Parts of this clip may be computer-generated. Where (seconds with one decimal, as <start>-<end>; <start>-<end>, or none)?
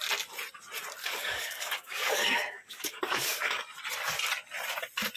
1.0-3.6